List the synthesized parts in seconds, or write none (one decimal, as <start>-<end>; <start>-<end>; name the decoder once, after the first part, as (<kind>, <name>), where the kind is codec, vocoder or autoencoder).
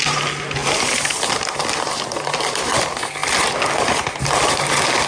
none